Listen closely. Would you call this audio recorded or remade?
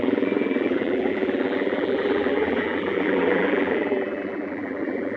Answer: remade